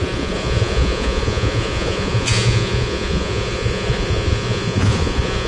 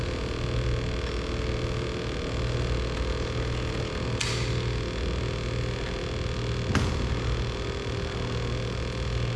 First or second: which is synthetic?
first